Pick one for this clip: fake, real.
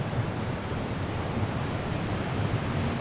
real